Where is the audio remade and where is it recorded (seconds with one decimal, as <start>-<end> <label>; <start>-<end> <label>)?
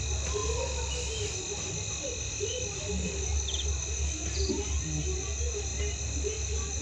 0.0-6.8 recorded